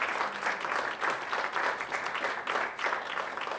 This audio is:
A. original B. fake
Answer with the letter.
A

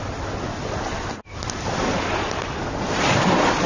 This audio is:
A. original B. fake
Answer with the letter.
A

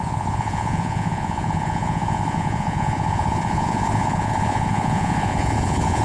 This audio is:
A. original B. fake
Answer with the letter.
B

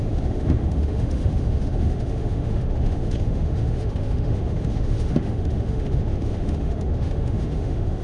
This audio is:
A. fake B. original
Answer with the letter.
A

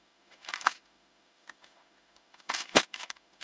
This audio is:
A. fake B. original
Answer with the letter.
A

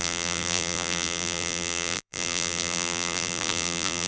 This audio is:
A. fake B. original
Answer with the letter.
A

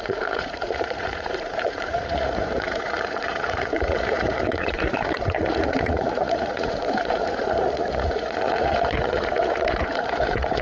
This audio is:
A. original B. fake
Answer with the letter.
B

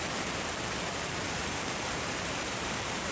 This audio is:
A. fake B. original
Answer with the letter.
A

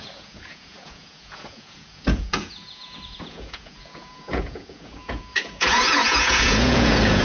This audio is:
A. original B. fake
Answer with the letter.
B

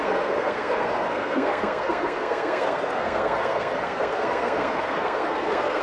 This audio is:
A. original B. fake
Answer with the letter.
B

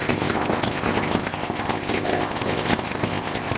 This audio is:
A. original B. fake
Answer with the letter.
B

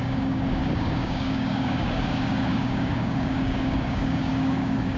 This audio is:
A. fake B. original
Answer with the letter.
A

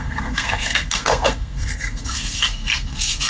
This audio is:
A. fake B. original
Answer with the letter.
A